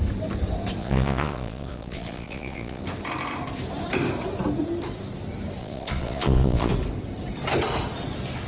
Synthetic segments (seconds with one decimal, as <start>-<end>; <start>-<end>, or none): 0.8-2.8; 5.6-6.7

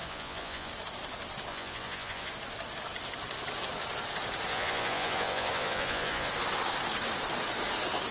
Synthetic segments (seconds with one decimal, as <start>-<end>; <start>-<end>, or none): 0.0-0.7; 1.5-2.3; 4.5-6.3

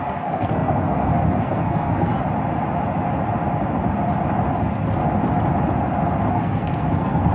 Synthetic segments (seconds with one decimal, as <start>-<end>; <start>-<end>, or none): 0.0-2.1; 6.3-7.3

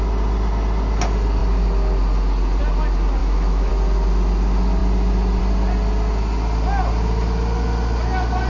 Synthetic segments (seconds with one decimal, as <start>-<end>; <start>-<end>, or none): 3.2-3.7

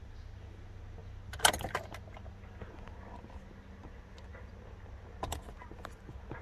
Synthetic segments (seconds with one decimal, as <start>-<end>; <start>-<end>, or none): none